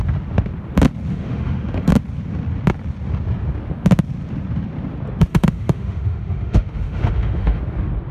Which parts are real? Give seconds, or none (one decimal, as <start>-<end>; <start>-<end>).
0.0-1.1; 1.9-5.3; 7.6-8.1